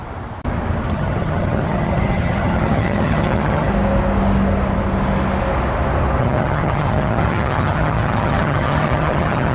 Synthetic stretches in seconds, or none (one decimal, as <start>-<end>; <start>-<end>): 0.9-3.7; 6.2-9.5